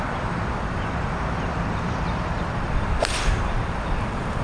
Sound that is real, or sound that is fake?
fake